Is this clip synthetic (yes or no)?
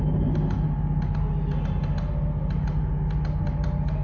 no